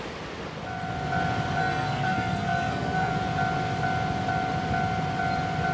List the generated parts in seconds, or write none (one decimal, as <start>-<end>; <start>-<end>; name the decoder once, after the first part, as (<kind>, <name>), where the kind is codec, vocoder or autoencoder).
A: 1.6-3.1 (codec, SNAC)